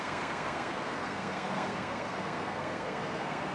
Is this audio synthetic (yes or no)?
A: yes